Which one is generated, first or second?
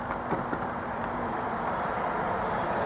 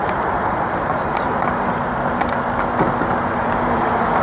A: first